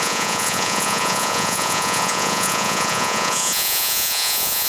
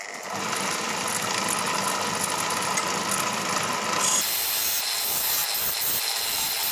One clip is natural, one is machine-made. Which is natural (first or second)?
second